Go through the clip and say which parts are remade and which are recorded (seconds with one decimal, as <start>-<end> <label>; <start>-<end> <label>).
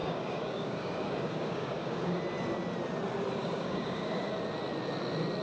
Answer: 0.0-2.2 remade; 2.2-3.4 recorded; 3.4-4.3 remade; 4.3-5.4 recorded